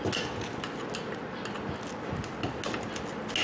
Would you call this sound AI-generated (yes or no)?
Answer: no